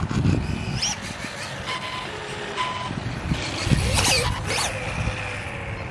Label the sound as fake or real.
real